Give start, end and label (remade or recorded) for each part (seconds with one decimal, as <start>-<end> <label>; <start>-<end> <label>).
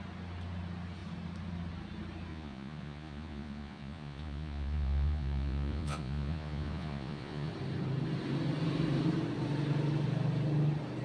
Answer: 0.0-2.3 recorded; 2.3-7.5 remade; 7.5-11.0 recorded